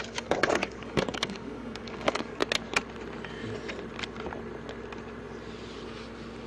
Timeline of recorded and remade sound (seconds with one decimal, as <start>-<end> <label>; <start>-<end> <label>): 0.0-2.4 remade; 2.4-6.5 recorded